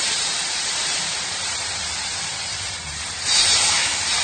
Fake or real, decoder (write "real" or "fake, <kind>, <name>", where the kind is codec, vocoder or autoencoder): fake, vocoder, BigVGAN v2